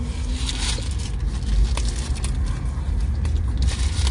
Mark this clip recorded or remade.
recorded